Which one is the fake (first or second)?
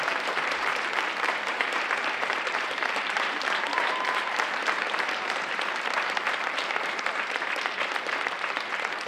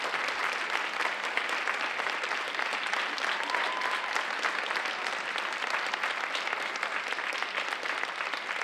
first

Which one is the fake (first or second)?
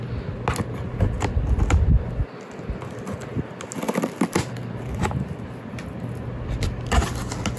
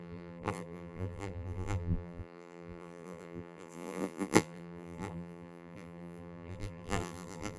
second